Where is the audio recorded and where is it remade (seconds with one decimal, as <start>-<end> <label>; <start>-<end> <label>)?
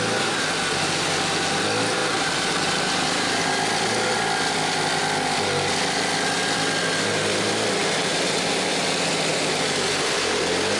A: 0.0-2.0 recorded; 2.0-3.5 remade; 3.5-7.8 recorded; 7.8-8.8 remade; 8.8-9.3 recorded; 9.3-10.4 remade; 10.4-10.8 recorded